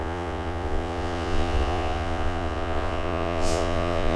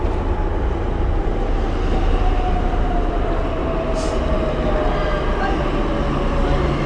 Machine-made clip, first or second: first